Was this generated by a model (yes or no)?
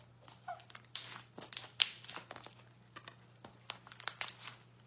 no